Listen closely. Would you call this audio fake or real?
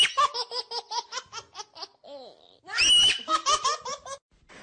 real